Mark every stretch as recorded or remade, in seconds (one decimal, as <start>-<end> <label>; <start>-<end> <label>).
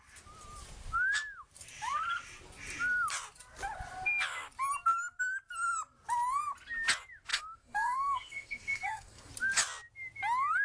0.0-7.3 recorded; 7.3-9.3 remade; 9.3-10.6 recorded